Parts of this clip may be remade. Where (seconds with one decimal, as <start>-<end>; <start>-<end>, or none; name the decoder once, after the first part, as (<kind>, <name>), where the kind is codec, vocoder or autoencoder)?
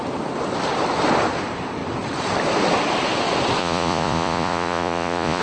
3.6-5.4 (vocoder, Vocos)